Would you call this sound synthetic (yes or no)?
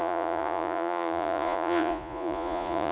yes